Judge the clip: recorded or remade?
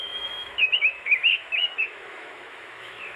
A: remade